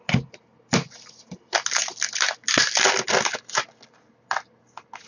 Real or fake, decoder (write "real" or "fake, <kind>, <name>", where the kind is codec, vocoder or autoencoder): real